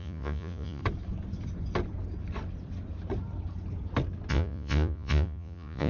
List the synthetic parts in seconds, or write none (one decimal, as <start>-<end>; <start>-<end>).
0.0-0.8; 4.3-5.9